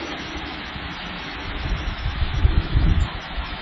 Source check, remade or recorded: remade